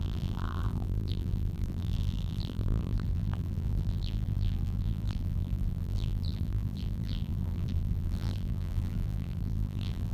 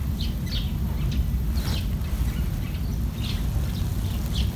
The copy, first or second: first